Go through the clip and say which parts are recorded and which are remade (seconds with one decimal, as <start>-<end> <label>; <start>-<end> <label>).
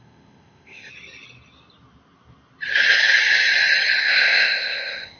0.0-0.9 remade; 0.9-4.0 recorded; 4.0-5.2 remade